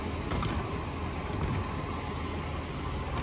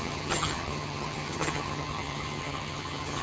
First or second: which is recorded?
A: first